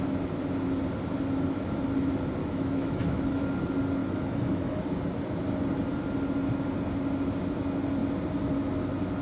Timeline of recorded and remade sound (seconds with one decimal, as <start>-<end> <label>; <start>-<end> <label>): 0.0-2.4 recorded; 2.4-3.4 remade; 3.4-4.0 recorded; 4.0-4.8 remade; 4.8-9.2 recorded